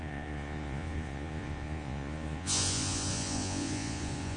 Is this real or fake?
fake